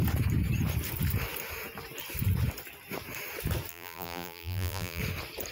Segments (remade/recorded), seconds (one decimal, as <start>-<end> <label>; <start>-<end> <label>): 0.0-3.7 recorded; 3.7-5.0 remade; 5.0-5.5 recorded